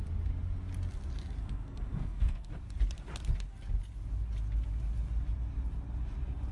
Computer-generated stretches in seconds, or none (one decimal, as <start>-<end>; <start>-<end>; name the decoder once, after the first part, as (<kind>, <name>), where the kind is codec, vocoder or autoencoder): 1.4-2.5 (codec, SNAC)